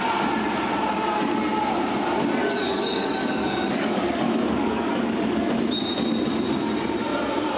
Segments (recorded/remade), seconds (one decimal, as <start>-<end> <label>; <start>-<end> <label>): 0.0-2.4 recorded; 2.4-5.6 remade; 5.6-7.6 recorded